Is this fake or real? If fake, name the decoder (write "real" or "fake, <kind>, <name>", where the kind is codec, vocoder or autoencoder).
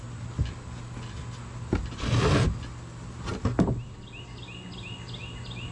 real